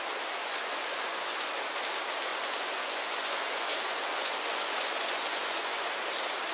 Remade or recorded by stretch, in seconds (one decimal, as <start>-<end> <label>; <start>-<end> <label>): 0.0-0.4 recorded; 0.4-1.6 remade; 1.6-2.3 recorded; 2.3-5.9 remade; 5.9-6.5 recorded